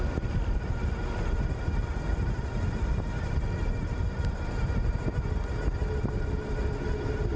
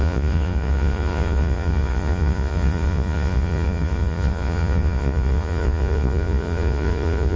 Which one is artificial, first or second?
second